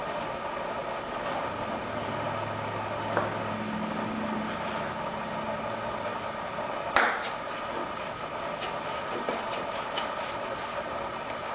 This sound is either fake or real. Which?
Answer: real